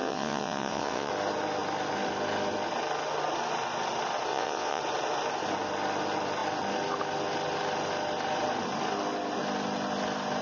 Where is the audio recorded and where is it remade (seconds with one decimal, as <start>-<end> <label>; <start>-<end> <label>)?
0.0-1.1 remade; 1.1-4.3 recorded; 4.3-4.8 remade; 4.8-10.4 recorded

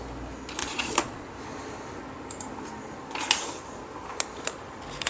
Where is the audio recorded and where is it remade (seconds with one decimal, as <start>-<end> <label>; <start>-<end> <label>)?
0.0-0.6 recorded; 0.6-1.3 remade; 1.3-5.1 recorded

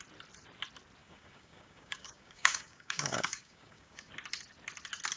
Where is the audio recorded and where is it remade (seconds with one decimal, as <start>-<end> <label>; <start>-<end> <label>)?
0.0-1.0 recorded; 1.0-4.1 remade; 4.1-5.2 recorded